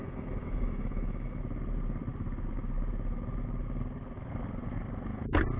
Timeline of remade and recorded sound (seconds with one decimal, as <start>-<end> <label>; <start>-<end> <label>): 0.0-1.4 remade; 1.4-5.6 recorded